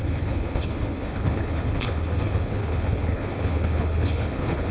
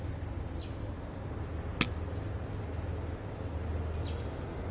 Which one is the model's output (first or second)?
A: first